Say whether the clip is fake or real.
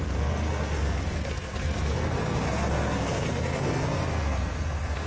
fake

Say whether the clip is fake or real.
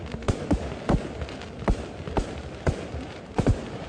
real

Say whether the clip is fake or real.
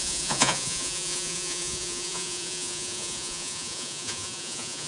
fake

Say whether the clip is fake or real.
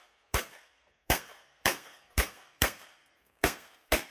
fake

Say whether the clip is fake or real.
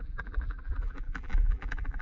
fake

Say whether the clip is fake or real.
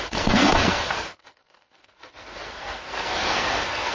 fake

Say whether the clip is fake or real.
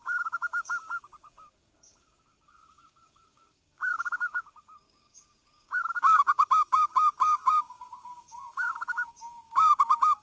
fake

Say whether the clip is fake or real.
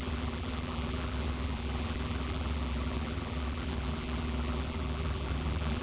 fake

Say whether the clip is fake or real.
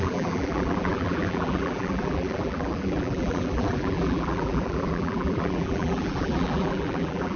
fake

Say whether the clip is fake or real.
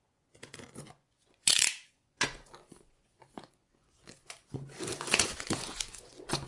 fake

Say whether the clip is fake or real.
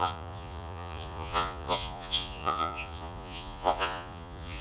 fake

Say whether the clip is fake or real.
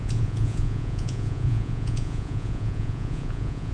fake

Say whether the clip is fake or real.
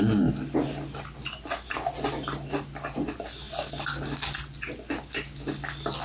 real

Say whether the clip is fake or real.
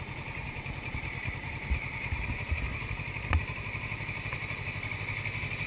real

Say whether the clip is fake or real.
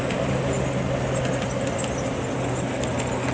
real